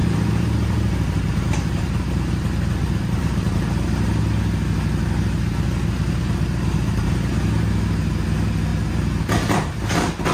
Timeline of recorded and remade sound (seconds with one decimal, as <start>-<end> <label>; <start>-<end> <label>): 0.0-3.6 remade; 3.6-10.3 recorded